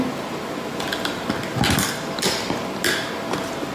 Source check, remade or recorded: recorded